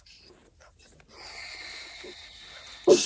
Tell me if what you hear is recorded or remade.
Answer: recorded